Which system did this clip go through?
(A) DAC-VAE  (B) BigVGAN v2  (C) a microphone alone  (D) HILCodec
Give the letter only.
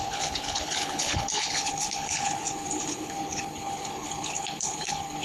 D